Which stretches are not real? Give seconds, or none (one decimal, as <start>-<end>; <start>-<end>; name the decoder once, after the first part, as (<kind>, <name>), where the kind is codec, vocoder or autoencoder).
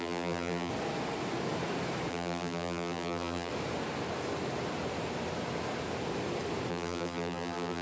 0.0-0.7 (vocoder, BigVGAN v2); 2.1-3.5; 6.7-7.8